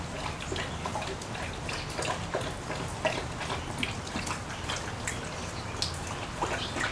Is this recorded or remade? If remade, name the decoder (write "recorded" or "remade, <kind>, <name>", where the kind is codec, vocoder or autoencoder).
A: recorded